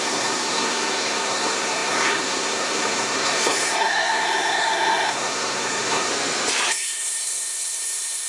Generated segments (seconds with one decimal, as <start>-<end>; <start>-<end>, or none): 0.0-6.1; 6.7-8.3